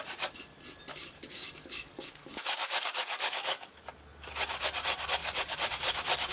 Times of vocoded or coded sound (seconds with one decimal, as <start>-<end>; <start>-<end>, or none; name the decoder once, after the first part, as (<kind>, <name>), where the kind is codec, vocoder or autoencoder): 0.9-3.8 (codec, DAC); 5.2-5.7